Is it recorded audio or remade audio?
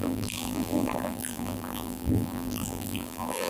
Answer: remade